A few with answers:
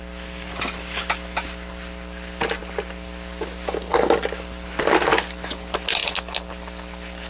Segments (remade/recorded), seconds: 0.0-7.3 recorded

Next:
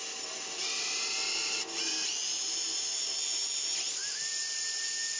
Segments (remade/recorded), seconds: 0.0-5.2 recorded

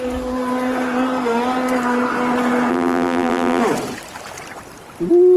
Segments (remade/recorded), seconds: 0.0-2.7 recorded; 2.7-3.6 remade; 3.6-5.4 recorded

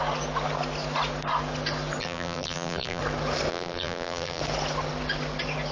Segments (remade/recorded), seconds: 0.0-2.0 recorded; 2.0-3.0 remade; 3.0-3.5 recorded; 3.5-4.4 remade; 4.4-5.7 recorded

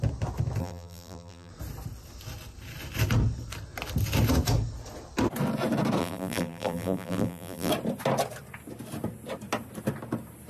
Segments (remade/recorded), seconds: 0.0-0.6 recorded; 0.6-1.5 remade; 1.5-6.0 recorded; 6.0-7.7 remade; 7.7-10.5 recorded

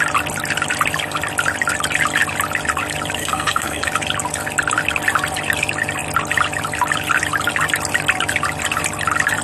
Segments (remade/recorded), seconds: 0.0-3.2 recorded; 3.2-3.9 remade; 3.9-9.4 recorded

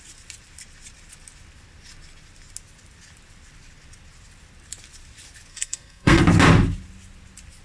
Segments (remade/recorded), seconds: 0.0-5.5 recorded; 5.5-6.2 remade; 6.2-7.6 recorded

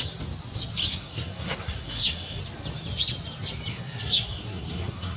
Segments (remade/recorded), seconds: 0.0-0.8 recorded; 0.8-2.4 remade; 2.4-3.7 recorded; 3.7-5.2 remade